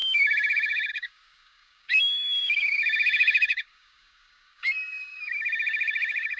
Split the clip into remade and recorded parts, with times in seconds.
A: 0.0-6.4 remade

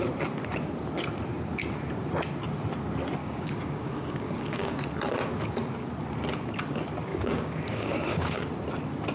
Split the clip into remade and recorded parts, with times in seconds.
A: 0.0-3.2 recorded; 3.2-4.8 remade; 4.8-7.1 recorded; 7.1-8.4 remade; 8.4-9.1 recorded